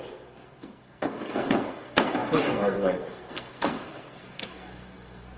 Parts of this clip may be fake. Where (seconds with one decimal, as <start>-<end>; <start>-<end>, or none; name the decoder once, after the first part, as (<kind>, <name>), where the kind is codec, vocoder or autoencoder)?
0.0-5.4 (codec, SNAC)